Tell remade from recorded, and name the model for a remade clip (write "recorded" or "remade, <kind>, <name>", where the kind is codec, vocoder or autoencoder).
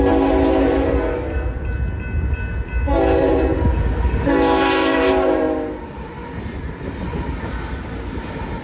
recorded